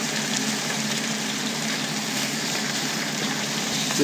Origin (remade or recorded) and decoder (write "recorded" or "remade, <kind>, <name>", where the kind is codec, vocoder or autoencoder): remade, vocoder, BigVGAN v2